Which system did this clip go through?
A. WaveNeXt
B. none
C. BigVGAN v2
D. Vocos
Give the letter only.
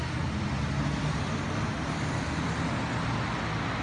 B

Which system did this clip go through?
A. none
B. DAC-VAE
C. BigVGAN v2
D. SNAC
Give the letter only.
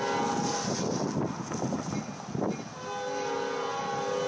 A